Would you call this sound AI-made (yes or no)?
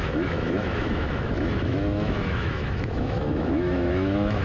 yes